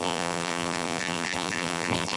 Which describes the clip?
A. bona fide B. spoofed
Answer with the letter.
B